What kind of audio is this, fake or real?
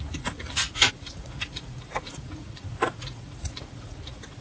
fake